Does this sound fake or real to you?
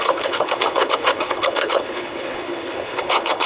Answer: fake